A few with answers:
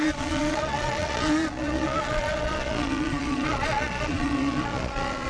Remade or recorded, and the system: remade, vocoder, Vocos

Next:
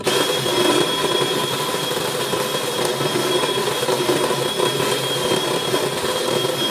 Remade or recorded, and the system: recorded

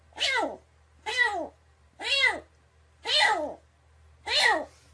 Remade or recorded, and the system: recorded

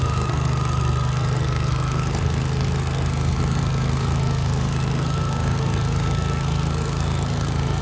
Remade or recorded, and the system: remade, codec, SNAC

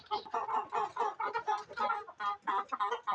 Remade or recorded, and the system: recorded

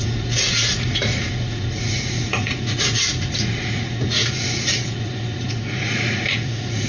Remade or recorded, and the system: remade, vocoder, Vocos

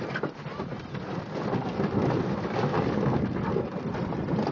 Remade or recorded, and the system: recorded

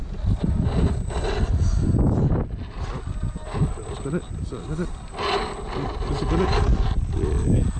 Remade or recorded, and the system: recorded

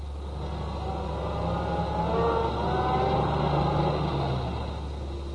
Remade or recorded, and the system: recorded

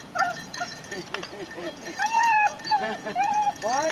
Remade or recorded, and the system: remade, vocoder, Vocos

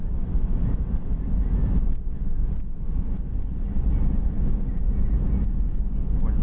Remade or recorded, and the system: recorded